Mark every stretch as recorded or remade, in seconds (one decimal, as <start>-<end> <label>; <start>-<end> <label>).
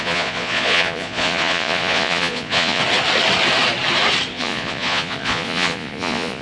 0.0-2.8 remade; 2.8-4.3 recorded; 4.3-6.4 remade